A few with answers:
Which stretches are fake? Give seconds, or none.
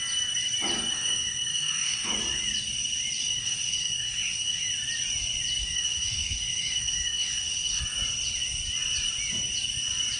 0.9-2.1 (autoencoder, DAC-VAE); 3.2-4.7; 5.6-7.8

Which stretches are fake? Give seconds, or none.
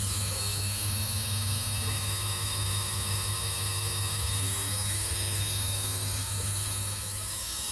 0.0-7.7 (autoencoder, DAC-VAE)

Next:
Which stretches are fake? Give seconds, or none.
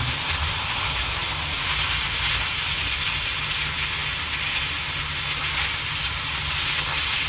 none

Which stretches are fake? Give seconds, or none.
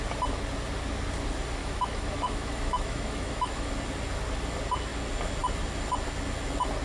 1.6-3.7 (autoencoder, DAC-VAE)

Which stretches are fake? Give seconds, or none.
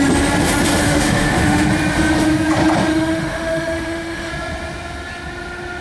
0.8-1.7 (autoencoder, DAC-VAE); 2.9-4.3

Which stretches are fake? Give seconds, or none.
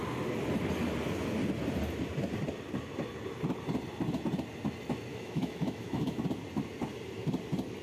5.1-6.2 (autoencoder, DAC-VAE)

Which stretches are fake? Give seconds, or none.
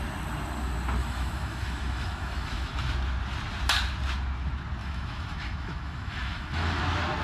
1.0-2.9 (autoencoder, DAC-VAE); 4.8-6.8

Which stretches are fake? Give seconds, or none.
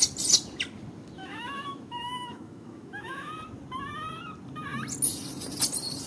1.2-3.3 (autoencoder, DAC-VAE)